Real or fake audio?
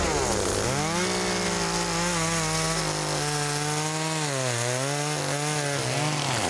real